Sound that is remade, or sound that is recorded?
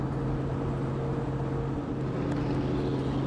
recorded